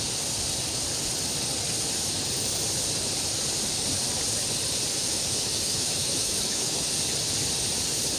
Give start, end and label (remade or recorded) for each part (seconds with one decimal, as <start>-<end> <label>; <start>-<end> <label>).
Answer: 0.0-4.9 recorded; 4.9-6.9 remade; 6.9-8.2 recorded